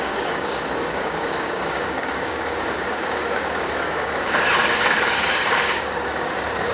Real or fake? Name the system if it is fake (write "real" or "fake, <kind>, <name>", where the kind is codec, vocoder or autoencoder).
fake, codec, DAC